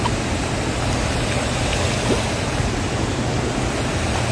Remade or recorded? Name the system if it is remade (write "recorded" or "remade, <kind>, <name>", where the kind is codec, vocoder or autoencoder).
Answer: recorded